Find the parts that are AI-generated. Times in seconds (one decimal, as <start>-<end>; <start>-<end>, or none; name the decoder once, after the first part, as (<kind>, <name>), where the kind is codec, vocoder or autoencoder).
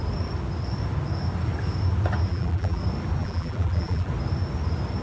2.3-2.8 (vocoder, BigVGAN v2); 3.2-4.1